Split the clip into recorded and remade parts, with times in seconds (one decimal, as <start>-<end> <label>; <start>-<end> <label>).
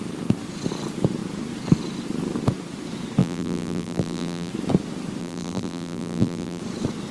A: 0.0-3.2 recorded; 3.2-4.5 remade; 4.5-5.2 recorded; 5.2-6.6 remade; 6.6-7.1 recorded